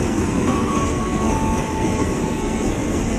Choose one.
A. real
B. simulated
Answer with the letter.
B